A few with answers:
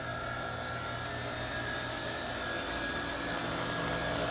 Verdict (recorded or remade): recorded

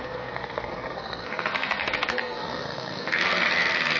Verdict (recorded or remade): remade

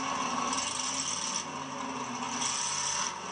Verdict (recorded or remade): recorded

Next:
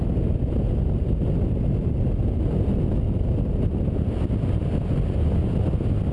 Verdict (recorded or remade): recorded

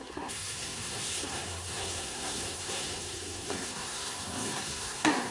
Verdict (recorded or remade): remade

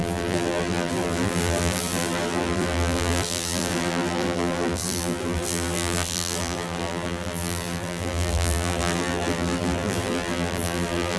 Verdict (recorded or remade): remade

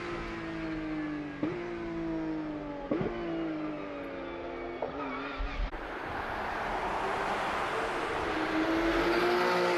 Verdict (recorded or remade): recorded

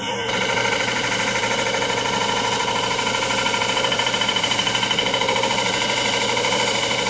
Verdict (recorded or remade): remade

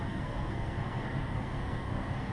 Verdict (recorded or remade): remade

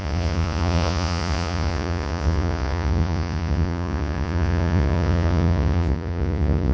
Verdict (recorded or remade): remade